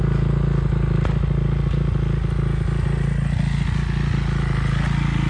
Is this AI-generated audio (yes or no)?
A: no